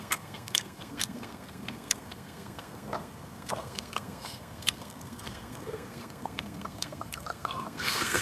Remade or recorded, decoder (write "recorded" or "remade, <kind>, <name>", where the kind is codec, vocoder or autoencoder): remade, codec, SNAC